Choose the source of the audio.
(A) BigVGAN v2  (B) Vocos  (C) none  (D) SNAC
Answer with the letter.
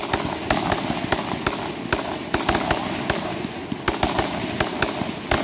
C